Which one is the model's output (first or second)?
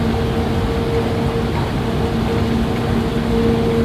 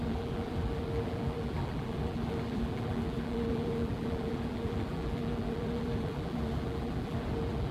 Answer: second